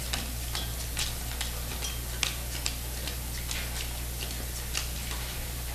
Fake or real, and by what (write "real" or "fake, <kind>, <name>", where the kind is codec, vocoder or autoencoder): real